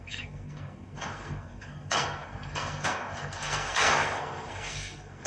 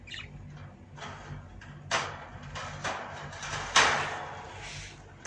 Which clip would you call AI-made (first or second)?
first